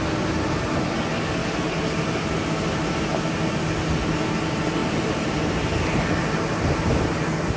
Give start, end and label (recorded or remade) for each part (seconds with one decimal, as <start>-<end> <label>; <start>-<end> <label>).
0.0-4.8 recorded; 4.8-7.1 remade; 7.1-7.6 recorded